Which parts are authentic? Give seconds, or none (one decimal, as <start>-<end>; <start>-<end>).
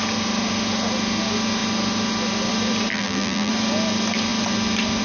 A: 0.0-2.9; 3.5-5.0